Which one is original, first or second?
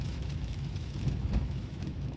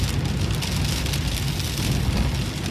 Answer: second